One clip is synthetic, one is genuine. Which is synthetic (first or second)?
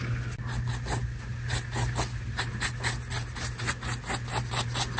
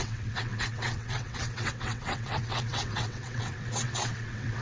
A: second